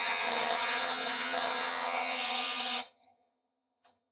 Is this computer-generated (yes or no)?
yes